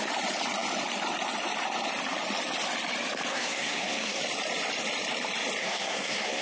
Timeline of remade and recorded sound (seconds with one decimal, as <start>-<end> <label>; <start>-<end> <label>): 0.0-3.3 recorded; 3.3-4.2 remade; 4.2-5.6 recorded; 5.6-6.4 remade